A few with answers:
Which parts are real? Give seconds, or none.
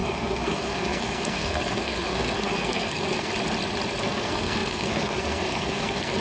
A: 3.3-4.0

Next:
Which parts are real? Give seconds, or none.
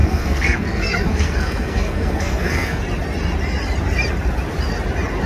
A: 2.8-5.3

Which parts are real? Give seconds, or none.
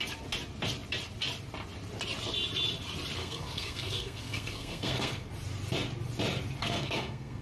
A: 0.0-3.2; 5.3-6.6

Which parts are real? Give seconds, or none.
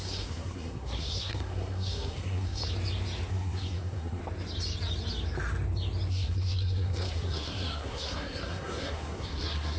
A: 2.6-3.3; 4.2-6.1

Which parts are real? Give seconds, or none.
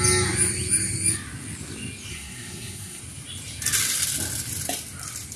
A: 0.0-2.1; 3.0-5.4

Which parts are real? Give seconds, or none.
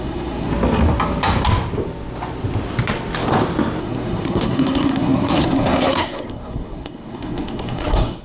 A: 0.5-3.8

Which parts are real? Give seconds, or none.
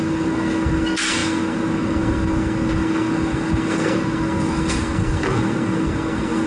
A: none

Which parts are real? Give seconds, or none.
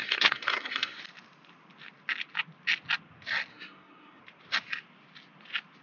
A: 1.0-3.5; 4.2-5.8